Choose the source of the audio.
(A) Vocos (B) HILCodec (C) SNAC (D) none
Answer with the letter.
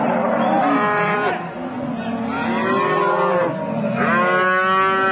D